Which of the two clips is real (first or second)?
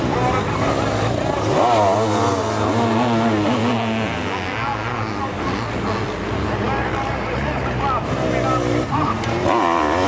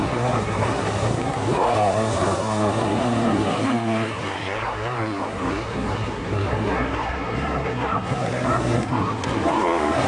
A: first